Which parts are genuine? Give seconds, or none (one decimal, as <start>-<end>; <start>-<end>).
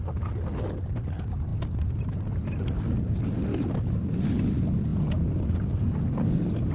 0.0-6.7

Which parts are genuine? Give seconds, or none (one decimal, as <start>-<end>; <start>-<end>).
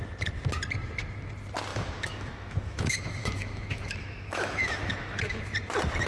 0.0-1.7; 5.4-6.1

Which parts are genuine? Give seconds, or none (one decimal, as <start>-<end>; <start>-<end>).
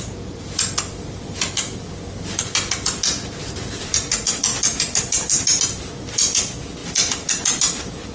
0.0-8.1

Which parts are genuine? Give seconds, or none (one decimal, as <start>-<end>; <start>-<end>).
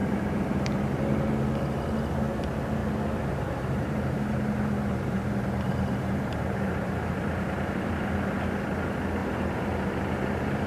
0.8-2.8; 8.0-9.2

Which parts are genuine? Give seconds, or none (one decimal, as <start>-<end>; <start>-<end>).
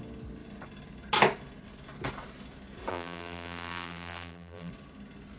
0.0-2.9; 4.7-5.4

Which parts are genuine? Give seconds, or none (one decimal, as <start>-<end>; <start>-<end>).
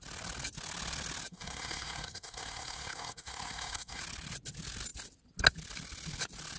0.0-1.3; 4.0-6.6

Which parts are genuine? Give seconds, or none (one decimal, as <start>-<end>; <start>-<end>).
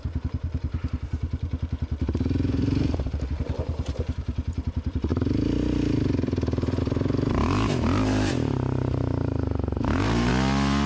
10.3-10.9